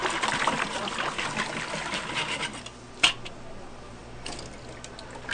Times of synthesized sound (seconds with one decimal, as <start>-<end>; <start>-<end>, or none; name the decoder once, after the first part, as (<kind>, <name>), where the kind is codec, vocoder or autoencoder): none